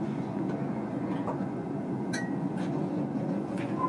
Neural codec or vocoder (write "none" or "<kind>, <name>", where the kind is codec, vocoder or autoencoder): vocoder, Vocos